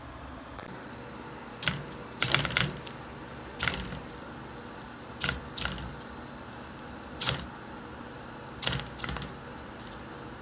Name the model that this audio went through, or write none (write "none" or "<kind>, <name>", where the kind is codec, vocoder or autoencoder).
none